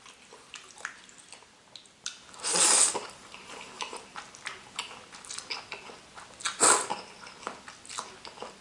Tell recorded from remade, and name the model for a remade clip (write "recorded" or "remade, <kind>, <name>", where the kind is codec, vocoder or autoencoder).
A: recorded